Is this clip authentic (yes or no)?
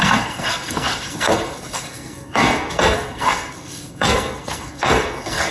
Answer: no